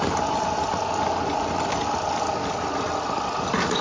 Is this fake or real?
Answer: real